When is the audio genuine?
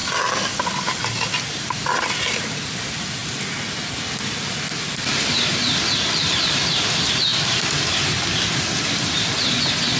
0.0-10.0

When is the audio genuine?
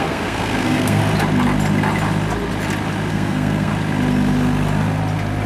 1.0-3.1; 3.7-5.5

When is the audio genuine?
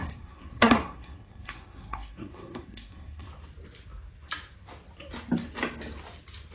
3.3-6.5